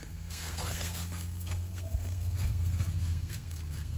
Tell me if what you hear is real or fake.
fake